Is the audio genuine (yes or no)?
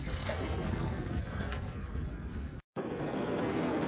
no